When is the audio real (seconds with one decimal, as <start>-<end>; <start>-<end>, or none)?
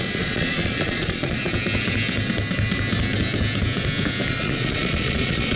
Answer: 1.4-4.3